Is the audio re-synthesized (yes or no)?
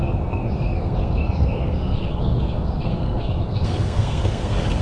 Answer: yes